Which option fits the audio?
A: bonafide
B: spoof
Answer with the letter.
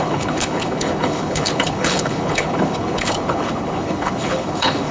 B